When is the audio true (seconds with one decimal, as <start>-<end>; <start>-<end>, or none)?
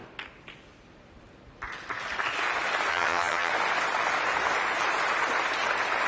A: 0.0-2.9; 3.5-6.1